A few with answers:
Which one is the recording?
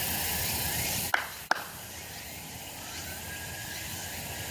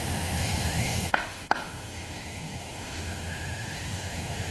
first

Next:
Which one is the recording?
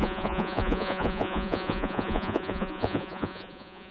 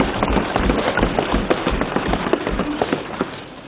second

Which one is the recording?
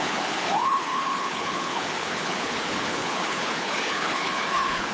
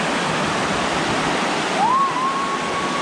second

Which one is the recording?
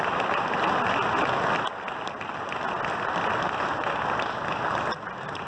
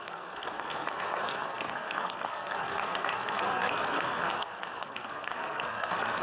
first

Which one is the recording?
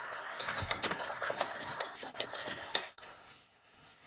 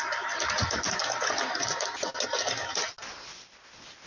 second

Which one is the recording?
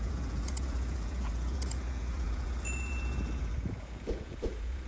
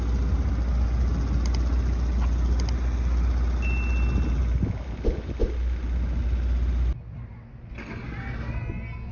second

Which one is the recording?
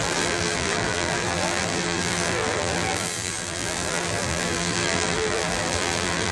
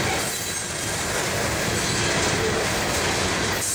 second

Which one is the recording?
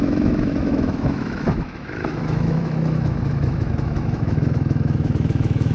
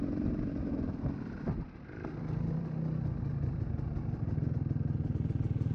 second